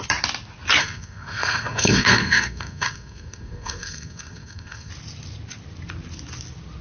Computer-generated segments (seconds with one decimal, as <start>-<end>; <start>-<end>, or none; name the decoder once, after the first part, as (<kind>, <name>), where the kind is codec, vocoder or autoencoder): 0.8-4.9 (codec, SNAC)